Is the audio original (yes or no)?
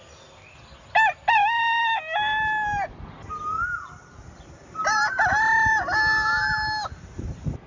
yes